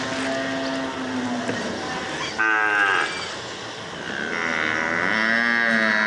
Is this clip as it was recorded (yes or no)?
yes